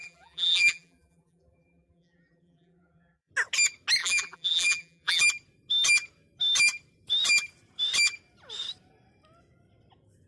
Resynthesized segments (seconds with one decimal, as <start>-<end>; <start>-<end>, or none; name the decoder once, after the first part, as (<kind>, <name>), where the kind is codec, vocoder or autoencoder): 0.0-3.3 (vocoder, BigVGAN v2); 4.0-5.2